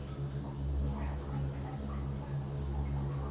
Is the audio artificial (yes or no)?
no